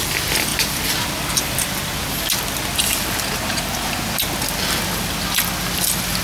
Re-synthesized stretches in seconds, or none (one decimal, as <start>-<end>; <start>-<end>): none

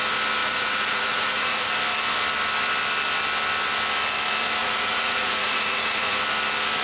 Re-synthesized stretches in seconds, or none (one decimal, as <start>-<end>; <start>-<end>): 0.4-1.7; 4.6-6.2

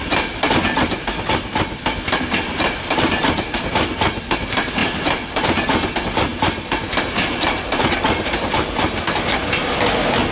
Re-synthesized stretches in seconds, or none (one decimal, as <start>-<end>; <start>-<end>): none